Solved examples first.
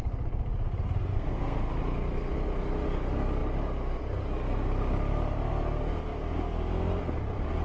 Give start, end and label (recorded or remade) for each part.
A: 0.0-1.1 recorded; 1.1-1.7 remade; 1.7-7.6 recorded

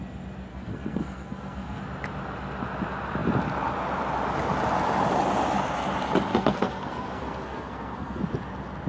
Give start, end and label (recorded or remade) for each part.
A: 0.0-0.5 recorded; 0.5-1.8 remade; 1.8-6.3 recorded; 6.3-8.2 remade; 8.2-8.9 recorded

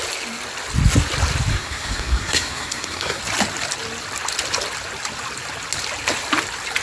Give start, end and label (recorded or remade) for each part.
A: 0.0-1.5 recorded; 1.5-3.2 remade; 3.2-6.8 recorded

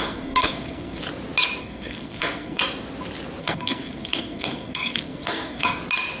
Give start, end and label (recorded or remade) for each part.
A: 0.0-1.0 remade; 1.0-1.6 recorded; 1.6-2.6 remade; 2.6-3.4 recorded; 3.4-5.8 remade; 5.8-6.2 recorded

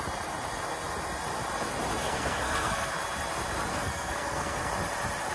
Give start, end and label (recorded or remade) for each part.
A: 0.0-2.0 recorded; 2.0-2.9 remade; 2.9-3.7 recorded; 3.7-4.7 remade; 4.7-5.3 recorded